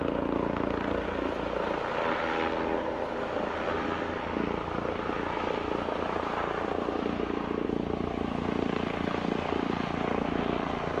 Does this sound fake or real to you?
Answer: real